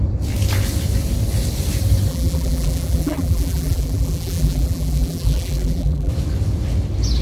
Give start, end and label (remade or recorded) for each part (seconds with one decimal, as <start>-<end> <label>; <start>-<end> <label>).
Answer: 0.0-2.1 recorded; 2.1-6.1 remade; 6.1-7.2 recorded